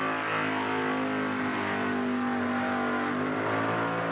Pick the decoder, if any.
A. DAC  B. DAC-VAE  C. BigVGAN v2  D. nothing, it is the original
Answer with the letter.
D